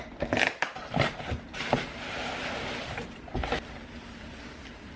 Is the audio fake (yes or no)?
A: no